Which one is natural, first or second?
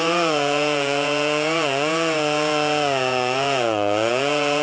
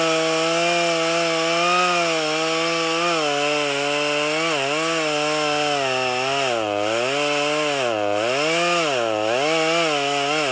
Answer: second